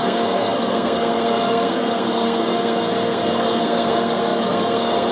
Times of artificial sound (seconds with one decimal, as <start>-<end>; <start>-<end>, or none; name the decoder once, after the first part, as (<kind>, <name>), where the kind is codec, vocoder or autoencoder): 0.0-5.1 (codec, SNAC)